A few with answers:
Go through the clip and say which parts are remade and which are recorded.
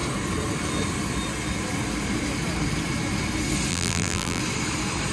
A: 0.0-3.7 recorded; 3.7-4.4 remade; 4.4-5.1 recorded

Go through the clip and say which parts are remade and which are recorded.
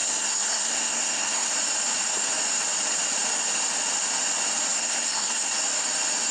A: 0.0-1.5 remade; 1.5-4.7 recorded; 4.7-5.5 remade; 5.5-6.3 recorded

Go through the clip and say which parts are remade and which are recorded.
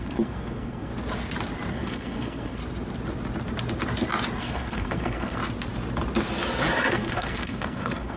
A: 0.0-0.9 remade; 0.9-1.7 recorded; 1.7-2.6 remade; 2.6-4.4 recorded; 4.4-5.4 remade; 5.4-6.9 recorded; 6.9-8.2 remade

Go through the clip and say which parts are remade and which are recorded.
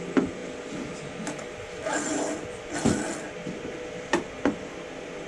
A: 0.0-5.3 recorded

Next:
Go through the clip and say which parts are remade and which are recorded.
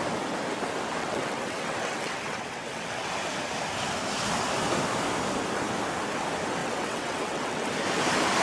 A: 0.0-1.0 recorded; 1.0-3.1 remade; 3.1-6.6 recorded; 6.6-7.7 remade; 7.7-8.4 recorded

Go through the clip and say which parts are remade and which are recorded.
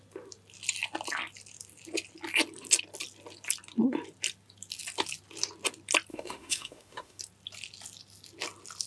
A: 0.0-6.1 recorded; 6.1-7.2 remade; 7.2-8.9 recorded